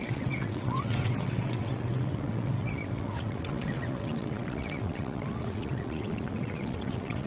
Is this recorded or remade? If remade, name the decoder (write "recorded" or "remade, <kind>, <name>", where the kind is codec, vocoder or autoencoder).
remade, vocoder, WaveNeXt